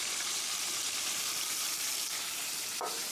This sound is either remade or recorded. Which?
remade